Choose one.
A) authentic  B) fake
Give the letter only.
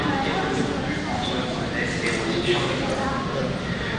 A